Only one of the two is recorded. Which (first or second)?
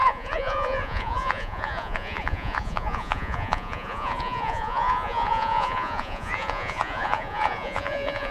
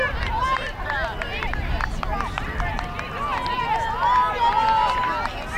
second